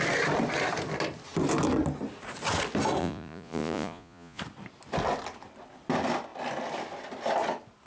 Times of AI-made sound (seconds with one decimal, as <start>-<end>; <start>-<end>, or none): 3.0-4.4